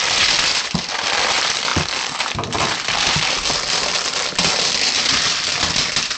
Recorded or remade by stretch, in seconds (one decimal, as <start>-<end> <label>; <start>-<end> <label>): 0.0-6.2 recorded